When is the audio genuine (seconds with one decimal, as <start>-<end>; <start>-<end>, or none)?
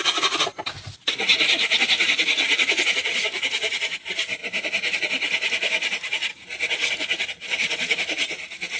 0.0-8.8